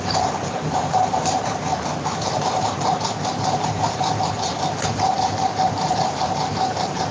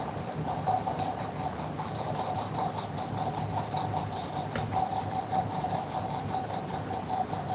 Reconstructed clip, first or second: first